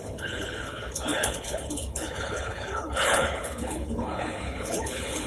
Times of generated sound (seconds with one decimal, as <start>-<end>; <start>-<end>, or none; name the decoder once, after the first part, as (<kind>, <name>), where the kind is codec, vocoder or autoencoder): 0.0-5.3 (codec, HILCodec)